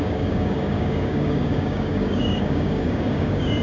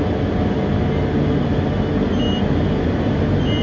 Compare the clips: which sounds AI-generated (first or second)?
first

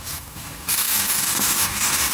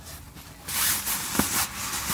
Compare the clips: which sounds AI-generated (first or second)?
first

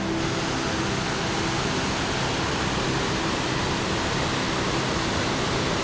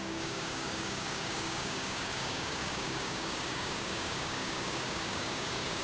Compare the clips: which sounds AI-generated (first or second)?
second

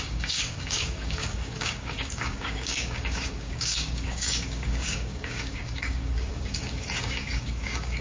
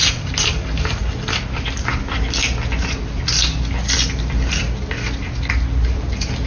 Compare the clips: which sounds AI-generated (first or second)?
first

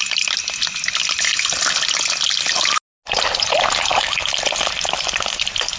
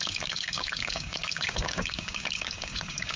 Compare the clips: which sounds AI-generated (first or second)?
second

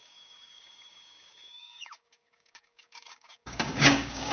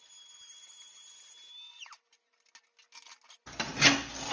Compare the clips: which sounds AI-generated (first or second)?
first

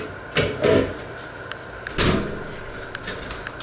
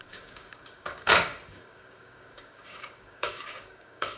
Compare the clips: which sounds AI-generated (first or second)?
second